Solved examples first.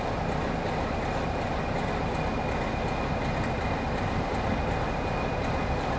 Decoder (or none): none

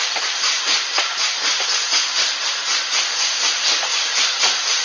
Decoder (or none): none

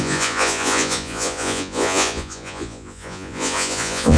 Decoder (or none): vocoder, Vocos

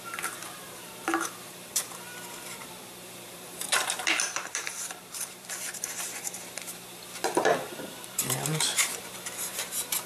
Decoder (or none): vocoder, BigVGAN v2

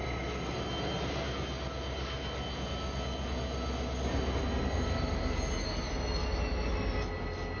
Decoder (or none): none